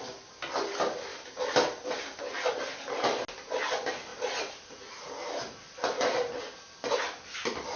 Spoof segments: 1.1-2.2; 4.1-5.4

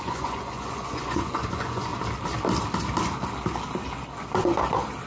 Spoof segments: 0.0-1.9